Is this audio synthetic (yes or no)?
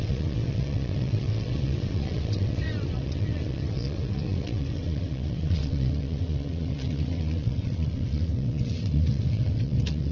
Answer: yes